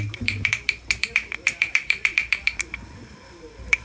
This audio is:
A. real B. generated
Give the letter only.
B